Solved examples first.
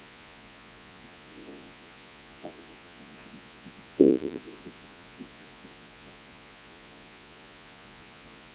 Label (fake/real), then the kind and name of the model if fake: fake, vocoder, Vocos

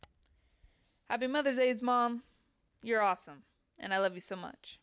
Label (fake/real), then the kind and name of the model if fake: real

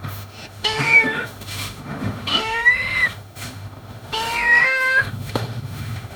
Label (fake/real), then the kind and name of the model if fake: fake, autoencoder, DAC-VAE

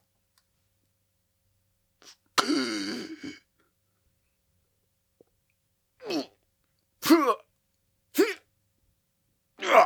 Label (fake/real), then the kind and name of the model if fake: real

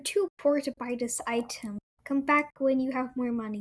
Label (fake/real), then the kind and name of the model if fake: real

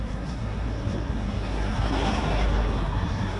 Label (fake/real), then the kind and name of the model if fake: fake, codec, SNAC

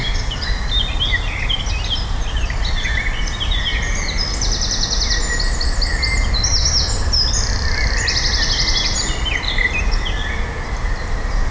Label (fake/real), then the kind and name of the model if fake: real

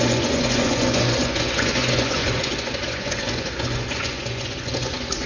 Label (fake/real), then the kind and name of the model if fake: fake, vocoder, Vocos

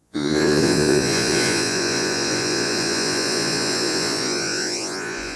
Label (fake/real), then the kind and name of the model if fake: fake, vocoder, Vocos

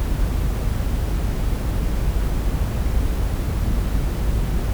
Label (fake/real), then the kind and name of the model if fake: real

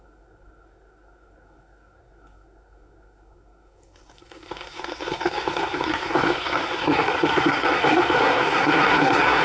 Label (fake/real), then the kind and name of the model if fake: fake, codec, SNAC